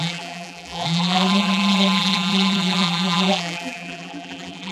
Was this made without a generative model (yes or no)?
no